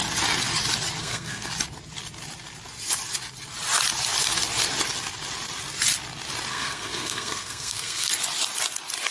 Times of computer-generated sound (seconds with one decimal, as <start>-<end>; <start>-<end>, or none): 1.0-1.5; 6.5-8.1